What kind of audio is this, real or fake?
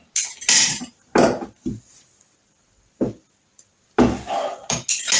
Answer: real